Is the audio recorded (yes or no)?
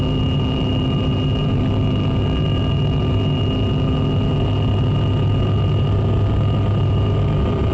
yes